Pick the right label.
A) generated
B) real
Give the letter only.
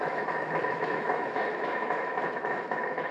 A